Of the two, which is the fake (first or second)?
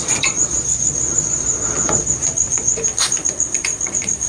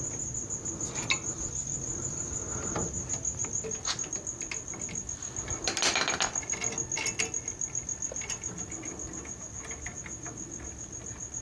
first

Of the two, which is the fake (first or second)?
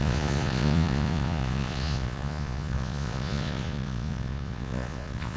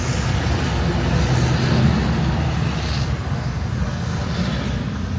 first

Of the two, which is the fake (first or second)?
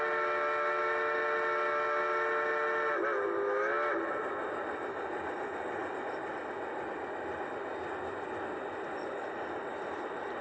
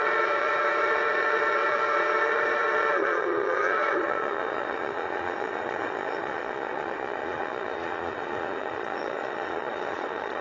second